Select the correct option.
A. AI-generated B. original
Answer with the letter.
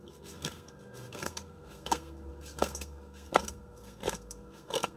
A